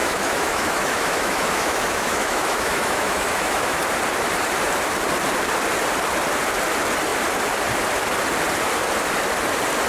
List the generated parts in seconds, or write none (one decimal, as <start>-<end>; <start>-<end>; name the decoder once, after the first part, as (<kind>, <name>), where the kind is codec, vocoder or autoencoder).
0.0-3.8 (autoencoder, DAC-VAE)